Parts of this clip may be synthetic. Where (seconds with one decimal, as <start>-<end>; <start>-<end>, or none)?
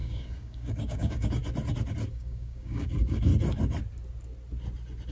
0.0-1.4; 2.1-3.3